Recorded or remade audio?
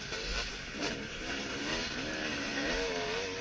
remade